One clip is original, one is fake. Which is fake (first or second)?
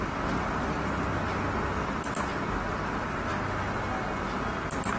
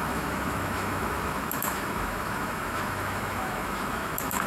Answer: second